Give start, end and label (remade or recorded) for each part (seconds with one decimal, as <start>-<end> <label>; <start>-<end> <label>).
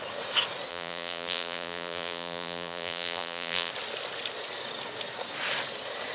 0.0-0.7 recorded; 0.7-3.7 remade; 3.7-6.1 recorded